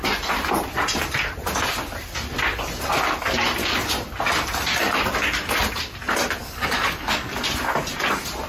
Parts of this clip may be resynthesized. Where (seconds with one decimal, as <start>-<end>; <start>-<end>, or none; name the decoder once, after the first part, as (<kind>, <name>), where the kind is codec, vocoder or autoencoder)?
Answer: 6.4-7.3 (codec, DAC)

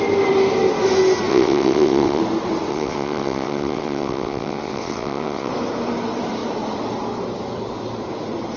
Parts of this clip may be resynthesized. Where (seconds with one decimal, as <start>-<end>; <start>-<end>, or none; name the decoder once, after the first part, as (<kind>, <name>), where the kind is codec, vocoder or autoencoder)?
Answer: 1.3-2.2 (vocoder, WaveNeXt); 2.7-5.5

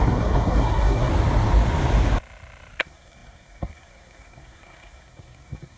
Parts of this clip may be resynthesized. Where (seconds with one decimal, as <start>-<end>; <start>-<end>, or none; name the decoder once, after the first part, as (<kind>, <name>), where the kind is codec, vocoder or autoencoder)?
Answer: 0.0-1.1 (codec, SNAC); 2.8-5.8

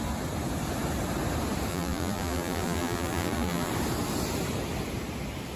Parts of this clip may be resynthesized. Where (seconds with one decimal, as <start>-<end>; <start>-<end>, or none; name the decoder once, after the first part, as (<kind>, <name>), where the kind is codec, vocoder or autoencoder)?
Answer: 1.7-3.7 (vocoder, BigVGAN v2)

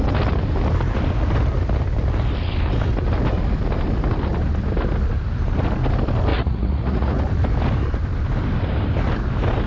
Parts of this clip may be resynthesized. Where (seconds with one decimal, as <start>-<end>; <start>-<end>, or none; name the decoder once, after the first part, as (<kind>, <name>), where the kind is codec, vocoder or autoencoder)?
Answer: 6.3-7.2 (vocoder, Vocos)